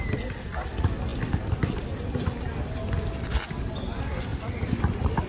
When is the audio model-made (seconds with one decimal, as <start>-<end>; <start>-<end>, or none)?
none